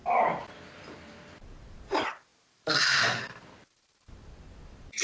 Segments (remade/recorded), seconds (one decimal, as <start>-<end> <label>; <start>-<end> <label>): 0.0-5.0 remade